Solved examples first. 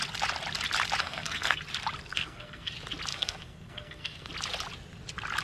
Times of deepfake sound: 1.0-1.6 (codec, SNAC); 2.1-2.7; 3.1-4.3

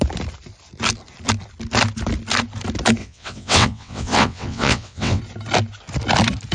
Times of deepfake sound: 3.0-5.2 (vocoder, WaveNeXt)

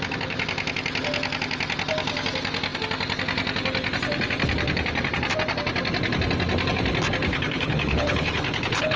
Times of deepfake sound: 7.3-9.0 (codec, HILCodec)

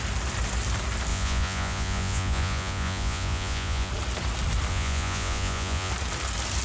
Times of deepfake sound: 1.1-3.9 (vocoder, Vocos); 4.7-5.9

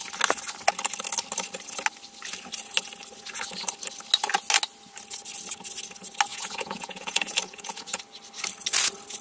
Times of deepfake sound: 6.3-8.0 (vocoder, Vocos)

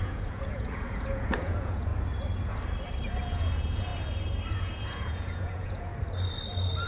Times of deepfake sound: 0.0-1.9 (vocoder, Vocos); 3.2-3.9; 4.5-5.9